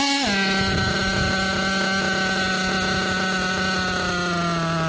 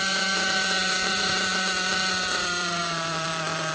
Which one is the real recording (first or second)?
first